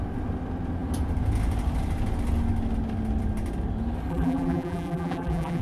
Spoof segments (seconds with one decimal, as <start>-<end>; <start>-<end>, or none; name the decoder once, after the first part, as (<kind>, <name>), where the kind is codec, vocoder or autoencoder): 4.1-5.6 (vocoder, BigVGAN v2)